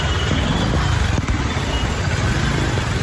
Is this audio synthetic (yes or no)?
no